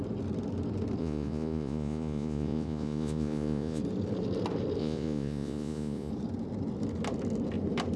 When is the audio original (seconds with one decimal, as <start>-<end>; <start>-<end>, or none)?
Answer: 0.0-1.0; 3.8-4.8; 6.1-8.0